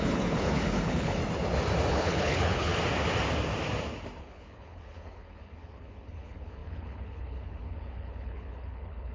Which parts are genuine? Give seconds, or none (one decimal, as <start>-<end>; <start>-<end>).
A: 1.2-1.9; 2.7-4.2